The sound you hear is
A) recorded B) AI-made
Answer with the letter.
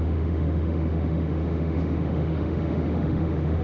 B